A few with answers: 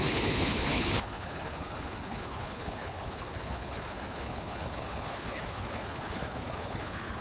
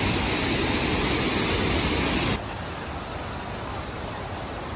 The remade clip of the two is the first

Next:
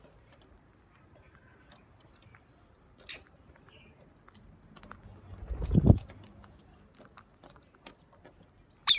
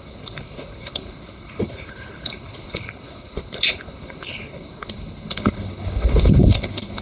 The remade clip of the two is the second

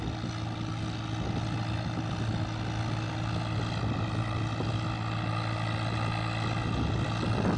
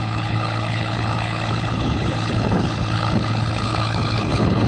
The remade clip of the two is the second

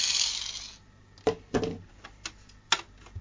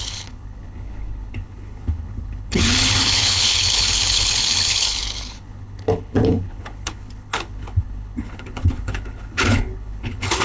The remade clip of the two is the second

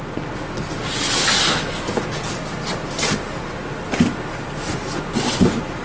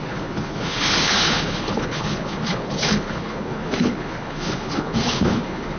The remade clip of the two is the second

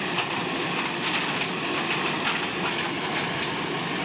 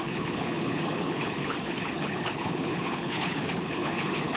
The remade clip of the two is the second